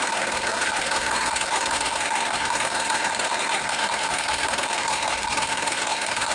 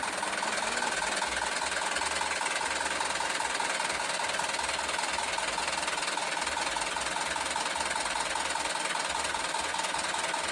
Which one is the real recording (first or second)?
second